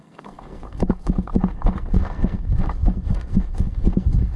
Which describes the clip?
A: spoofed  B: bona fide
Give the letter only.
A